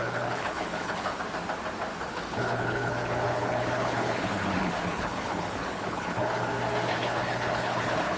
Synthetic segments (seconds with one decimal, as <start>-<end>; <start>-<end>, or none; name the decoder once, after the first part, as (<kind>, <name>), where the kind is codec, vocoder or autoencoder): 0.0-1.2 (codec, HILCodec); 1.9-6.5; 6.9-8.2